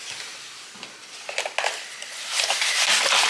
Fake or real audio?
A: real